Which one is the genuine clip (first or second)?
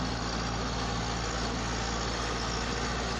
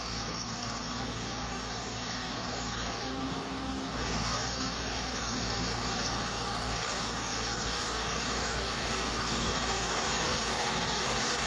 first